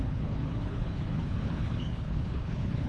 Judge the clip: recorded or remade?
remade